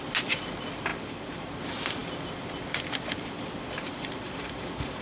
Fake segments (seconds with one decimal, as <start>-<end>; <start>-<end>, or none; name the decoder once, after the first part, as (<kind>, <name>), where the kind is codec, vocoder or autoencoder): 0.9-1.6 (vocoder, BigVGAN v2); 2.0-5.0